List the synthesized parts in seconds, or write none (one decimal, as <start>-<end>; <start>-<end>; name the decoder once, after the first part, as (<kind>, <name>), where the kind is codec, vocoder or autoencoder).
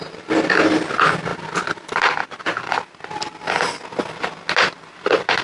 none